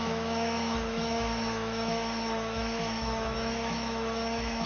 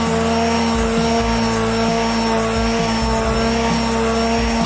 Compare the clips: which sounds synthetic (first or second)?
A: first